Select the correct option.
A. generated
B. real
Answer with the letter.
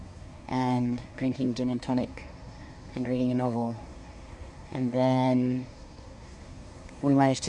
A